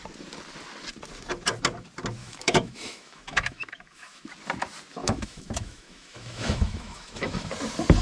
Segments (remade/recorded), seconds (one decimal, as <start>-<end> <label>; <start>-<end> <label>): 0.0-2.2 recorded; 2.2-4.3 remade; 4.3-5.0 recorded; 5.0-7.5 remade; 7.5-8.0 recorded